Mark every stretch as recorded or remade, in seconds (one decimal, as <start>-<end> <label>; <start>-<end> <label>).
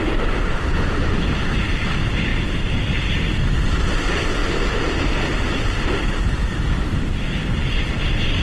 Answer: 0.0-8.4 recorded